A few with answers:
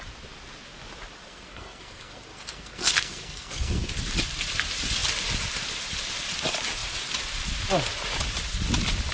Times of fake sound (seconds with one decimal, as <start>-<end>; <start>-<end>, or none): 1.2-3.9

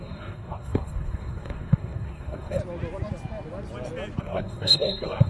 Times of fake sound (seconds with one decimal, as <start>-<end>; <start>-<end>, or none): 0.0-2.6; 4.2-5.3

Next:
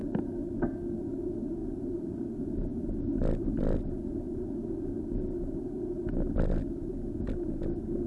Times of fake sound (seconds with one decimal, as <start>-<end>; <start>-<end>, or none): 1.6-2.3

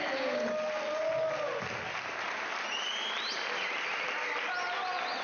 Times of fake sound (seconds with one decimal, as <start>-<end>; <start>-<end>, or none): none

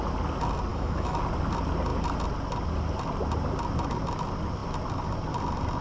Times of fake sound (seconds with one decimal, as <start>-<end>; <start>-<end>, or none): 0.7-1.2

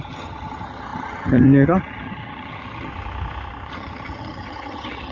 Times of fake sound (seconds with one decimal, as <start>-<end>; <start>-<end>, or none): 0.0-2.9; 3.7-5.1